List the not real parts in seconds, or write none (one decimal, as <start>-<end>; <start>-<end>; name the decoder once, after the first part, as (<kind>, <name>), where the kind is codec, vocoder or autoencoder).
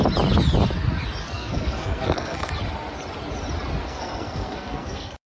1.2-2.5 (codec, SNAC); 3.8-5.4